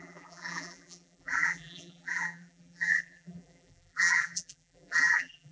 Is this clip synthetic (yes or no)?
yes